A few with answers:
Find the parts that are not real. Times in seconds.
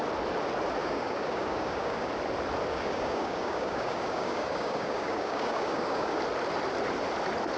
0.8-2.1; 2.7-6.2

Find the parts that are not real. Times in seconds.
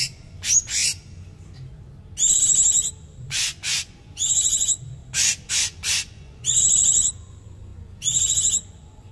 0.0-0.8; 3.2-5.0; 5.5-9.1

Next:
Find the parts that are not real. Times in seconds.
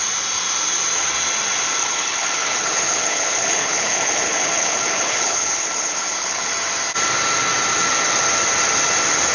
1.8-6.5